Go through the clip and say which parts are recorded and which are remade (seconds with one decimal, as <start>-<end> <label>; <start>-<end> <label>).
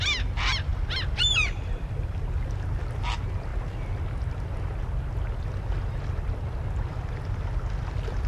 0.0-0.7 recorded; 0.7-2.3 remade; 2.3-8.3 recorded